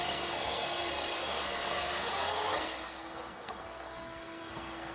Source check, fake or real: fake